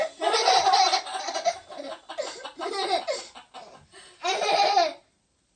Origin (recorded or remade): recorded